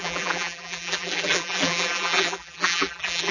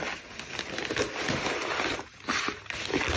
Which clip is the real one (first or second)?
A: second